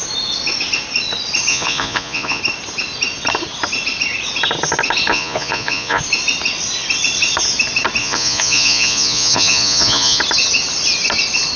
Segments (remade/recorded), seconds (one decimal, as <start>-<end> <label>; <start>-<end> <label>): 0.0-1.5 recorded; 1.5-2.4 remade; 2.4-5.1 recorded; 5.1-6.0 remade; 6.0-8.0 recorded; 8.0-10.2 remade; 10.2-11.6 recorded